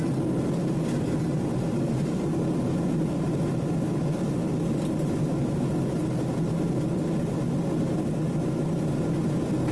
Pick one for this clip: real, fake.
real